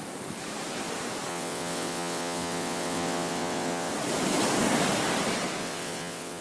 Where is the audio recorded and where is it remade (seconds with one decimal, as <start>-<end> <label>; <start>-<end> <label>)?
0.0-1.3 recorded; 1.3-3.9 remade; 3.9-5.6 recorded; 5.6-6.4 remade